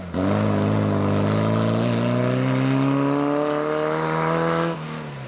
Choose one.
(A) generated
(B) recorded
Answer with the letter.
B